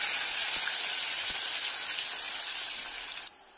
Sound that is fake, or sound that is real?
real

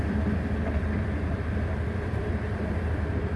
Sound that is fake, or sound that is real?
fake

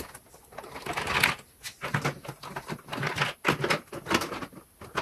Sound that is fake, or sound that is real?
real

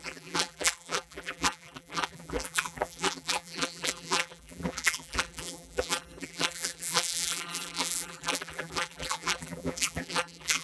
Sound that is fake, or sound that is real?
fake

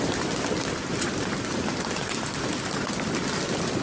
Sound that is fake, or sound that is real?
fake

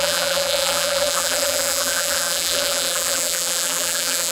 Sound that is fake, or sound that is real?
fake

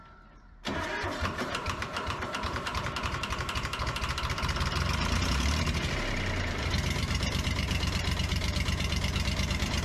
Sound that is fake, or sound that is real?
fake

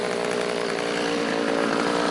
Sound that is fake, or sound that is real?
fake